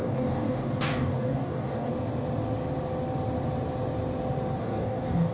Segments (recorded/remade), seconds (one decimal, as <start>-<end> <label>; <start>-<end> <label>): 0.0-1.9 remade; 1.9-4.6 recorded; 4.6-5.3 remade